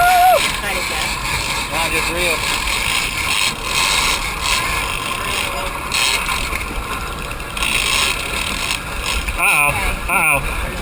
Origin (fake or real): real